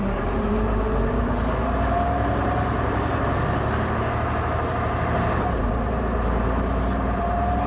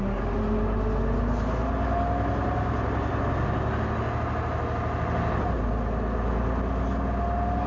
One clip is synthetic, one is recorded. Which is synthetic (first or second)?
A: first